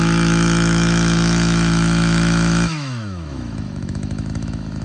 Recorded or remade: remade